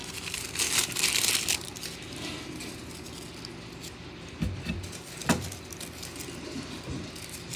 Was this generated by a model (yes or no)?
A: no